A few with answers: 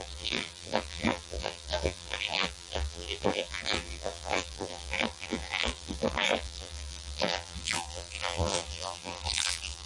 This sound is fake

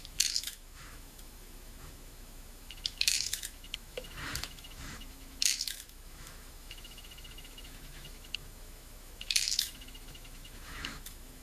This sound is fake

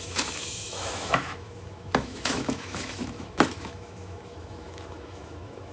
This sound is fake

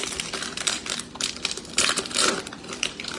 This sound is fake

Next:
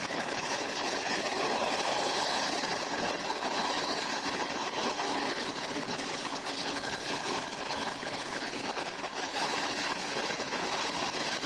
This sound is fake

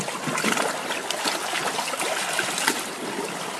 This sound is real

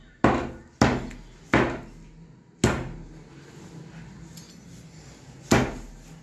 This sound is real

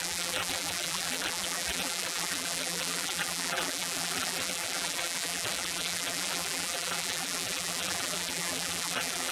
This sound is fake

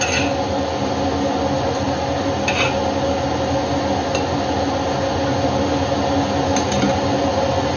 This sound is real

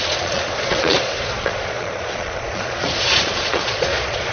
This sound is fake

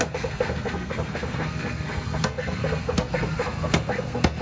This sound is fake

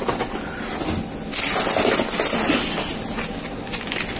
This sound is real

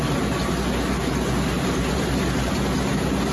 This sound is real